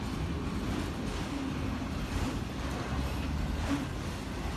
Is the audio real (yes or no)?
yes